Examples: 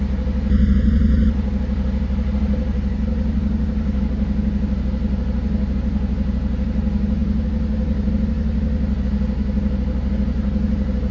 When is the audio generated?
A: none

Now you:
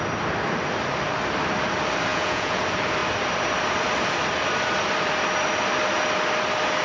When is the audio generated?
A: 2.1-2.6

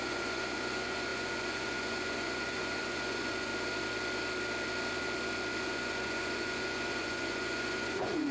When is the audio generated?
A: 0.0-3.5; 5.6-8.3

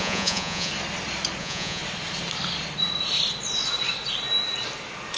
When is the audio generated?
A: 0.0-0.7; 1.4-1.8